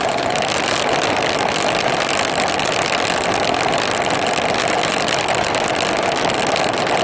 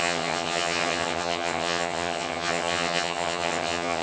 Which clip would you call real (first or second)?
first